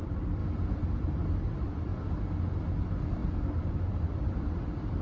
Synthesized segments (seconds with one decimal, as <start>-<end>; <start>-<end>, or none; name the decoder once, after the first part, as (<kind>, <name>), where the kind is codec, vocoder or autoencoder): 0.0-0.4 (vocoder, BigVGAN v2); 1.5-1.9; 2.8-3.2; 3.7-5.0